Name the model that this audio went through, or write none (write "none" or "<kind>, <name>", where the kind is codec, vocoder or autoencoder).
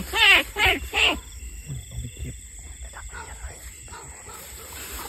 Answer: vocoder, BigVGAN v2